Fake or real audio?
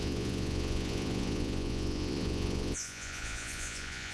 fake